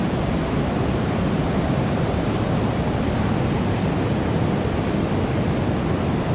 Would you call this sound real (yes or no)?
yes